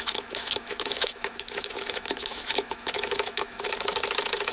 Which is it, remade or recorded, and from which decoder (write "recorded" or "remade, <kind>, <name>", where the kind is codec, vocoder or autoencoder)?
remade, autoencoder, DAC-VAE